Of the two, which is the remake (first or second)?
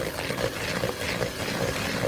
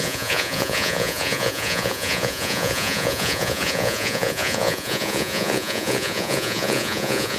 second